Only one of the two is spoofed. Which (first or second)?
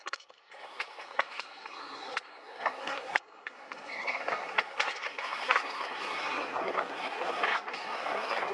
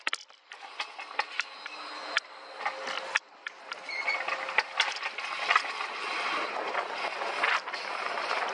first